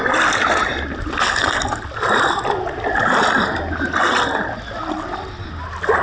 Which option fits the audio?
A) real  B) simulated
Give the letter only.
A